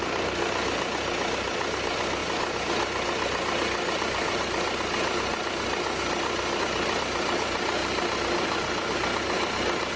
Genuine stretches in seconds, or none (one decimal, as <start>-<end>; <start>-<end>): 0.0-10.0